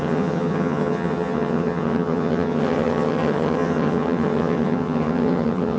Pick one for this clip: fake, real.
fake